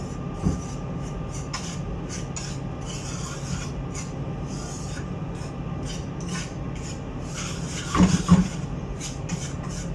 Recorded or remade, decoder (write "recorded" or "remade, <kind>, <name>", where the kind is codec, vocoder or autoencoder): recorded